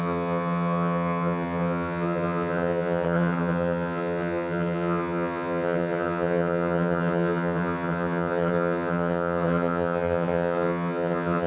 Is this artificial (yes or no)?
yes